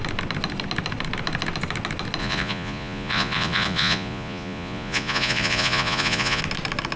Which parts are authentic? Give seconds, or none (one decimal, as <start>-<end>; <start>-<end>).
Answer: 0.0-2.2; 6.4-7.0